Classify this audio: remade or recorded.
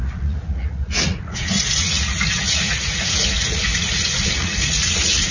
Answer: remade